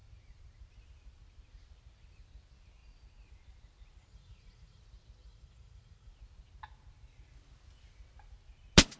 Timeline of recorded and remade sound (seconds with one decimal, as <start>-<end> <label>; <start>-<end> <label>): 0.0-4.1 recorded; 4.1-4.8 remade; 4.8-5.2 recorded; 5.2-6.1 remade; 6.1-9.0 recorded